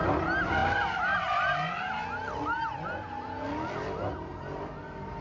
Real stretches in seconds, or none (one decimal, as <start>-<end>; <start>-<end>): 0.0-5.2